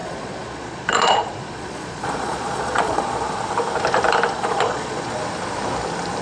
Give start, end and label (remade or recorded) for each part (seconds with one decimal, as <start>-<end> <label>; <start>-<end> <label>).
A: 0.0-3.4 remade; 3.4-4.3 recorded; 4.3-5.1 remade; 5.1-6.2 recorded

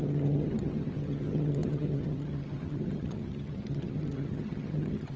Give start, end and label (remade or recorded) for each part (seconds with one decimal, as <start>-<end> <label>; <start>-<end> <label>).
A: 0.0-5.2 remade

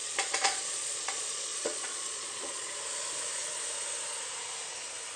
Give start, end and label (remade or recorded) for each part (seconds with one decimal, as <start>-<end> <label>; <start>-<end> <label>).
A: 0.0-2.7 remade; 2.7-5.2 recorded

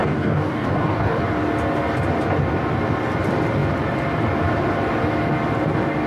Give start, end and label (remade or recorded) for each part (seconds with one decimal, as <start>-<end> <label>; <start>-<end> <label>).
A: 0.0-1.2 remade; 1.2-6.1 recorded